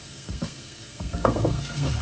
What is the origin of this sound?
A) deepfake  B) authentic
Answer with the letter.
A